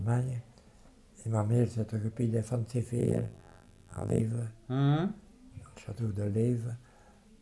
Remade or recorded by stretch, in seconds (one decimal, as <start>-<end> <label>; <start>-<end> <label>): 0.0-3.0 recorded; 3.0-4.2 remade; 4.2-7.4 recorded

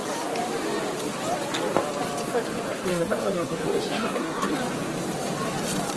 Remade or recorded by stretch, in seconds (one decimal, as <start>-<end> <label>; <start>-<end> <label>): 0.0-2.9 recorded; 2.9-4.5 remade; 4.5-6.0 recorded

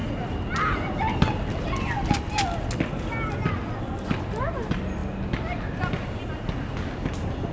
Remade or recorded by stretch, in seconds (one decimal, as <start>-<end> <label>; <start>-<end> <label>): 0.0-7.5 recorded

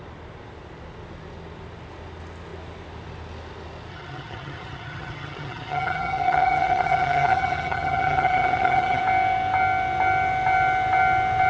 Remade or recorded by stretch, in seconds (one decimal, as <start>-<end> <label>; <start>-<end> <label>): 0.0-3.9 recorded; 3.9-9.0 remade; 9.0-11.5 recorded

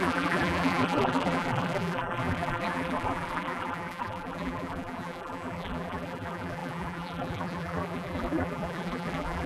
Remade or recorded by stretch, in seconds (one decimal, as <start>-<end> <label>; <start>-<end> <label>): 0.0-9.5 remade

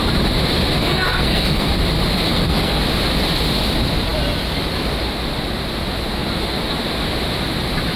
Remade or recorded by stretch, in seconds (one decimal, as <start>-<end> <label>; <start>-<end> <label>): 0.0-0.8 recorded; 0.8-1.7 remade; 1.7-2.3 recorded; 2.3-2.8 remade; 2.8-8.0 recorded

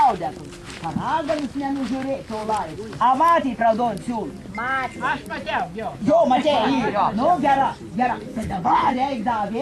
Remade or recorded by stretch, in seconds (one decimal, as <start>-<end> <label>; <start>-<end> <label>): 0.0-8.3 recorded; 8.3-8.9 remade; 8.9-9.6 recorded

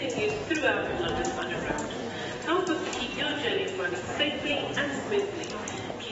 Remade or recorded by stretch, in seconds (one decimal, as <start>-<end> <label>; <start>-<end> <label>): 0.0-3.3 recorded; 3.3-5.0 remade; 5.0-6.1 recorded